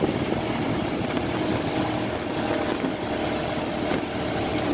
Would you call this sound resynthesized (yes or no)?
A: no